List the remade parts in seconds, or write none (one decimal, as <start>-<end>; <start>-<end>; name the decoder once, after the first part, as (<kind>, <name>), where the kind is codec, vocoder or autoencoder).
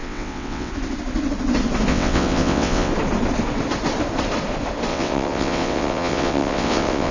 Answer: 0.0-0.7 (vocoder, WaveNeXt); 1.9-2.9; 4.9-7.1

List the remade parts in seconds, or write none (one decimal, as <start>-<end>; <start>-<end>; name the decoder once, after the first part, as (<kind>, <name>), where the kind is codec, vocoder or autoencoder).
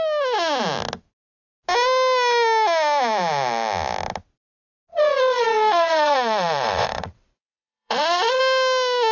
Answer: 4.9-8.4 (vocoder, WaveNeXt)